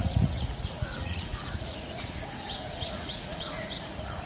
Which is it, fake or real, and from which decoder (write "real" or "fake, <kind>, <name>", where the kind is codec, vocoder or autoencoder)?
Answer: fake, vocoder, Vocos